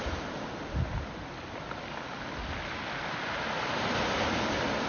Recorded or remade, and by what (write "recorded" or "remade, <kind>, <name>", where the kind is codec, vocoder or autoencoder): recorded